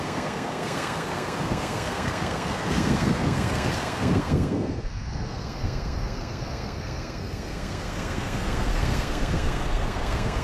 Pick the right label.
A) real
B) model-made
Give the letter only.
B